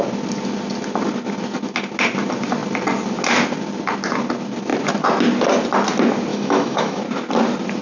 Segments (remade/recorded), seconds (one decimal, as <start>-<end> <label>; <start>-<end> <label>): 0.0-6.3 recorded; 6.3-7.0 remade; 7.0-7.8 recorded